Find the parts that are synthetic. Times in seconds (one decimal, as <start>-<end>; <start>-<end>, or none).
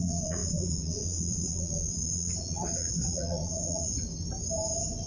0.0-4.1